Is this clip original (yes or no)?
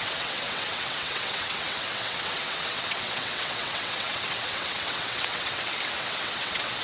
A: no